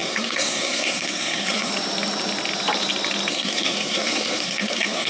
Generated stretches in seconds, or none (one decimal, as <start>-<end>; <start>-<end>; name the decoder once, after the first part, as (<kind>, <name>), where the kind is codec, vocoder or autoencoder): 0.0-1.7 (codec, SNAC); 3.3-5.1